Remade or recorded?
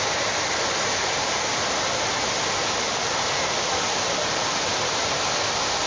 remade